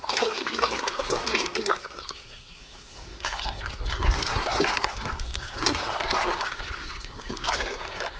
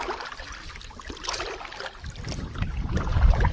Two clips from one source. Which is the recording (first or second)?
second